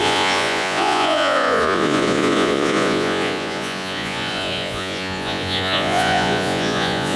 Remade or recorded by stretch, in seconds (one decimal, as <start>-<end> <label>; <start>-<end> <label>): 0.0-7.2 remade